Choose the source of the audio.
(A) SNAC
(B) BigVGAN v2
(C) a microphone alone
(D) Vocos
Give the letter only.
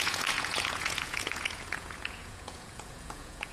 D